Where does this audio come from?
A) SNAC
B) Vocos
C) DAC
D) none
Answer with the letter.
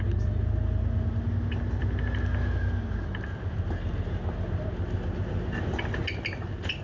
D